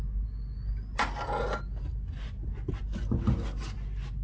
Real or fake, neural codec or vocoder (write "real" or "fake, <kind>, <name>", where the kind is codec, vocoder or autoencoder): real